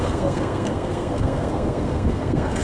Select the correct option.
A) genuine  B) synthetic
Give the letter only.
B